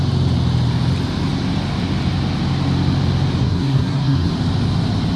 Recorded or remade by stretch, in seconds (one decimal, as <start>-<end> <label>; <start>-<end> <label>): 0.0-3.4 recorded; 3.4-4.3 remade; 4.3-5.2 recorded

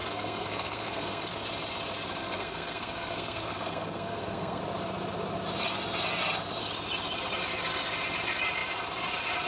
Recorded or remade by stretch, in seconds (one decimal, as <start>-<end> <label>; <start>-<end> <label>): 0.0-1.3 remade; 1.3-2.2 recorded; 2.2-4.6 remade; 4.6-9.5 recorded

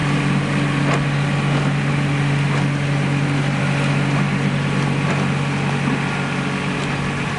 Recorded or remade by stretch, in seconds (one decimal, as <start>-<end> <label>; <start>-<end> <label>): 0.0-7.4 recorded

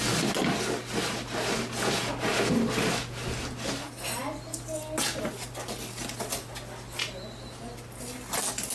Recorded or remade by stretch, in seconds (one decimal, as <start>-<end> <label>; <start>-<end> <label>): 0.0-8.7 recorded